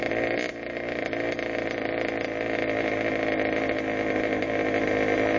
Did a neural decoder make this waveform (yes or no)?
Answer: no